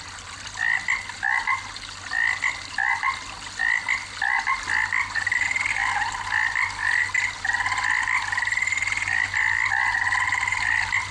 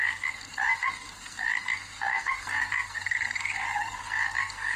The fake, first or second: second